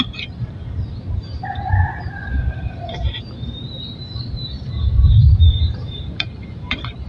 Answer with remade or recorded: remade